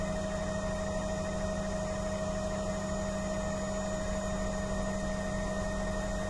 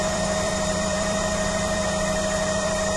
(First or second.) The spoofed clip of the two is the second